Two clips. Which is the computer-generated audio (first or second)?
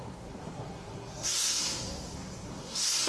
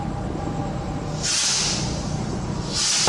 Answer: first